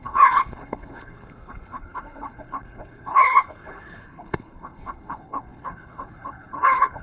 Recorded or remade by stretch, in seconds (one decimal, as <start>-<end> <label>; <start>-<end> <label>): 0.0-7.0 remade